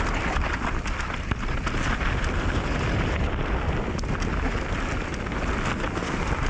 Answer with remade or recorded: recorded